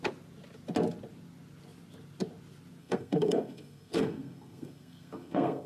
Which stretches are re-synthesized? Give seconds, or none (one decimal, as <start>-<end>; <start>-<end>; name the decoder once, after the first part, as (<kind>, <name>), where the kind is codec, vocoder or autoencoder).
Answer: 2.8-5.7 (codec, SNAC)